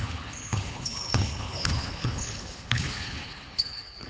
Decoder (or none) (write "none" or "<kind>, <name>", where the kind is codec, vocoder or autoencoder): codec, HILCodec